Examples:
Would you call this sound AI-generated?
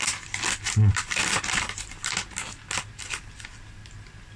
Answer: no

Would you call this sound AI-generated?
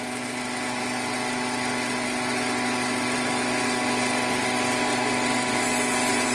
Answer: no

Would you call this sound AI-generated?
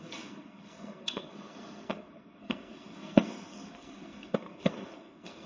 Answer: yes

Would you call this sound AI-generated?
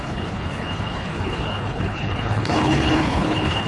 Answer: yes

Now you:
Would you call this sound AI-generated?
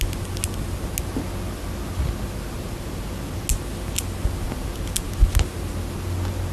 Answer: no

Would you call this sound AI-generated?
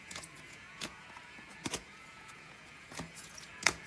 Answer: yes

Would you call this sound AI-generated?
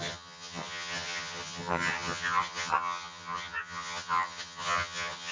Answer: yes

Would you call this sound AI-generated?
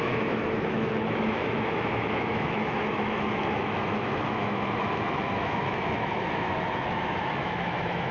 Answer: yes